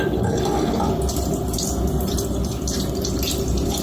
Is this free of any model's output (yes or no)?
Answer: yes